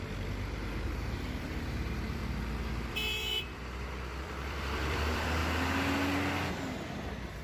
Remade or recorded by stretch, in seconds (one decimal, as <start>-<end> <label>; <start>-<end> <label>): 0.0-2.2 remade; 2.2-2.9 recorded; 2.9-5.4 remade; 5.4-6.5 recorded; 6.5-7.4 remade